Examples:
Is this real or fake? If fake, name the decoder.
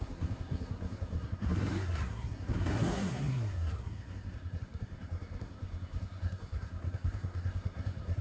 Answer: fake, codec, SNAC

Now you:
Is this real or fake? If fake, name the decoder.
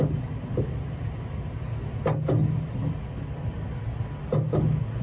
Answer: real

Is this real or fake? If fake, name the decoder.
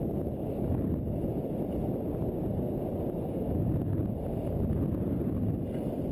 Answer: real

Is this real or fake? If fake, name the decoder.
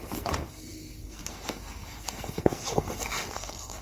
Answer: fake, codec, SNAC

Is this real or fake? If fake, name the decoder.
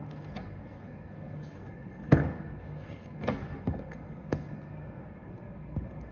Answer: fake, codec, SNAC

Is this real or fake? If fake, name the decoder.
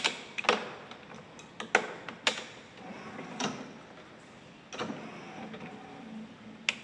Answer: real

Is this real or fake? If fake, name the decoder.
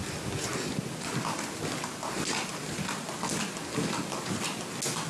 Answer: real